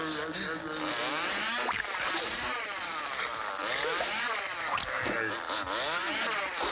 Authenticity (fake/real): real